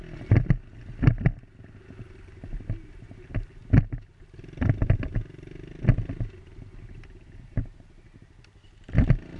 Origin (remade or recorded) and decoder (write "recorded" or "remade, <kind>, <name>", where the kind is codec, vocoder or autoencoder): recorded